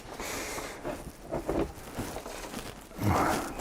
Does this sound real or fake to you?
real